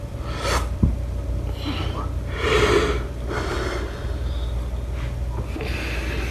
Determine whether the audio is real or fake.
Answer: real